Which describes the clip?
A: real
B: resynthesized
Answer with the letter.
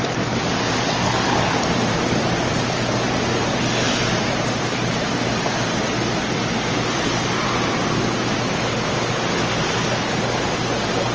A